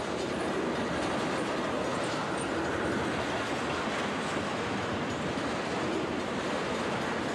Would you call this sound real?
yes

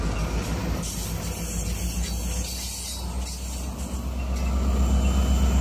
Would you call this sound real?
yes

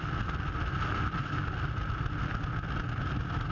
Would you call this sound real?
yes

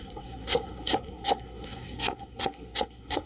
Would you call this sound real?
no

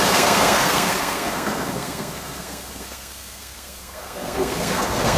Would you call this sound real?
no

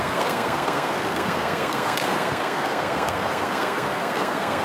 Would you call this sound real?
no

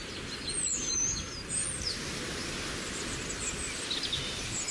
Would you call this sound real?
yes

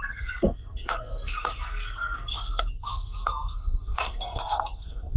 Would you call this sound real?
no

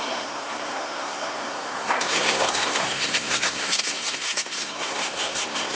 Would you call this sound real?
no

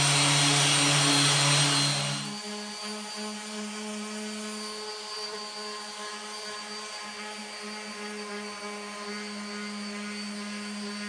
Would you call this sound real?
yes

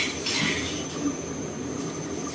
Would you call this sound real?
yes